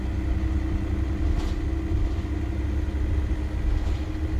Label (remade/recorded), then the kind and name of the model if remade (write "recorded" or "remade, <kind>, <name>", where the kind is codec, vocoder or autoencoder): recorded